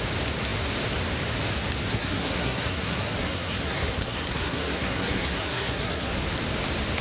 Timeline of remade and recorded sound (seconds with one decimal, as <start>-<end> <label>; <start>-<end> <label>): 0.0-1.9 recorded; 1.9-6.1 remade; 6.1-7.0 recorded

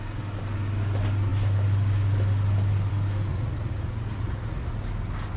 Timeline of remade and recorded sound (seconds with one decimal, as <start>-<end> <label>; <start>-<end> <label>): 0.0-3.3 recorded; 3.3-4.8 remade; 4.8-5.4 recorded

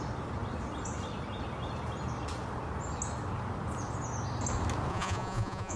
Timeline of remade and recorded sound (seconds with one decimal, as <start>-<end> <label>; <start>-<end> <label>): 0.0-4.9 recorded; 4.9-5.8 remade

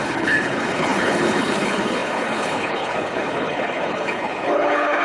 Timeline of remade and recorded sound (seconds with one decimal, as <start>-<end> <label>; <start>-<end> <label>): 0.0-5.0 remade

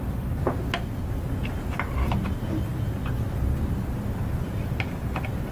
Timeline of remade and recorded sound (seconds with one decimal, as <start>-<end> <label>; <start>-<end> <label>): 0.0-5.5 recorded

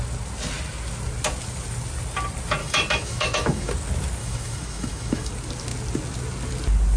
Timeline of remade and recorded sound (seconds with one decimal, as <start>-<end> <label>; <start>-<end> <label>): 0.0-2.6 recorded; 2.6-3.7 remade; 3.7-4.2 recorded; 4.2-5.3 remade; 5.3-7.0 recorded